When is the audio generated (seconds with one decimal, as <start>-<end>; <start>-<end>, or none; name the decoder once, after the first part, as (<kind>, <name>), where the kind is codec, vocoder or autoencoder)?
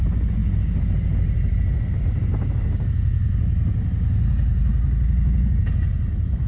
none